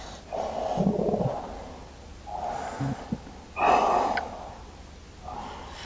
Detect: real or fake real